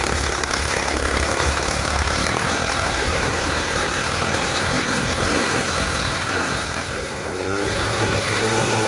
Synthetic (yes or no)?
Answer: yes